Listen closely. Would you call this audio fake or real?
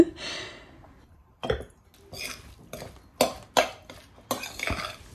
real